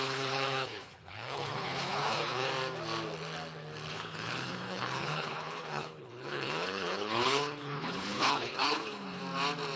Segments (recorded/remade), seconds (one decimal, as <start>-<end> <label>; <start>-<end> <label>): 0.0-2.5 remade; 2.5-3.9 recorded; 3.9-9.2 remade; 9.2-9.8 recorded